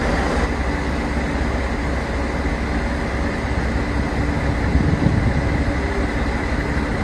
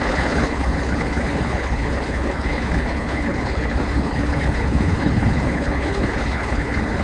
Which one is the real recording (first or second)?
first